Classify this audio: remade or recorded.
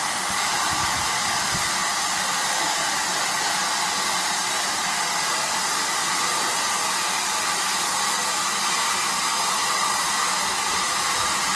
recorded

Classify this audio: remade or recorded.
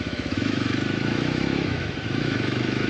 remade